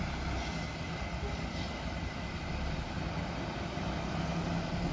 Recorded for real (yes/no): yes